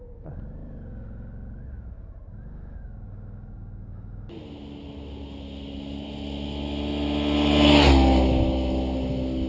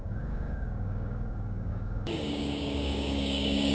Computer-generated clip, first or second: second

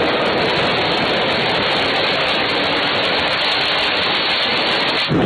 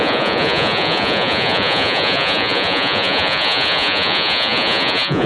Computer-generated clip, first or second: second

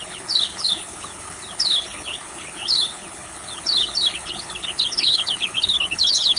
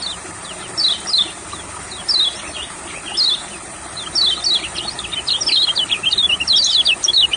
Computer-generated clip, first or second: first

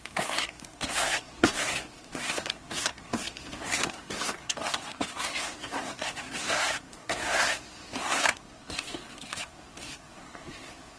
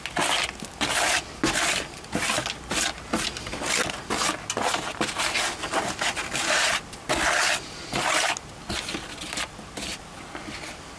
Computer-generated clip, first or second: first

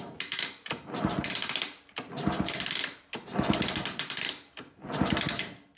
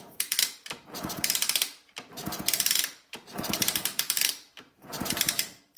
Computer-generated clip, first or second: second